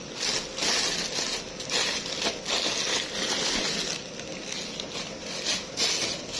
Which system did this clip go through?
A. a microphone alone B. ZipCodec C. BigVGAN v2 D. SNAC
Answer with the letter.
A